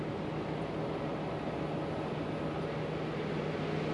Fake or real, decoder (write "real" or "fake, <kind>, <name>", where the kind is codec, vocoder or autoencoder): real